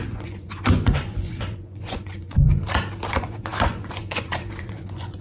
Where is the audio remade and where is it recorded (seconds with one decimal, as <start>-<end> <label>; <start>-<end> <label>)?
0.0-2.5 remade; 2.5-3.1 recorded; 3.1-5.2 remade